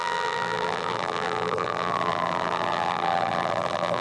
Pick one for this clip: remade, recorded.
remade